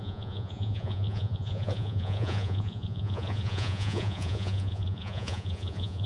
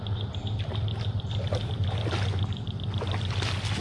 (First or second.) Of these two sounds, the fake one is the first